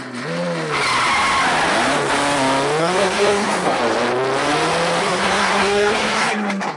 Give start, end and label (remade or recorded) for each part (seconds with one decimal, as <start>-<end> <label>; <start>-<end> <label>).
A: 0.0-2.8 recorded; 2.8-3.8 remade; 3.8-5.0 recorded; 5.0-6.3 remade; 6.3-6.8 recorded